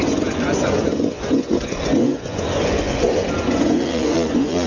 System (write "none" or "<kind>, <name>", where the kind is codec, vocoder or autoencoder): vocoder, Vocos